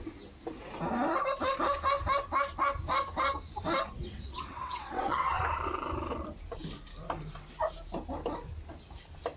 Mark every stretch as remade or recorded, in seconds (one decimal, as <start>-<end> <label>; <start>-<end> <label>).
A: 0.0-4.0 recorded; 4.0-5.4 remade; 5.4-9.4 recorded